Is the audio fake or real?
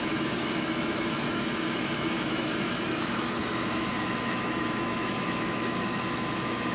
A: fake